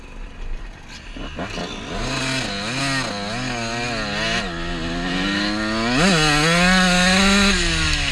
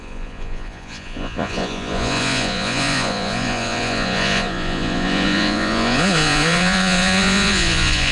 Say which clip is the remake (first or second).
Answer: second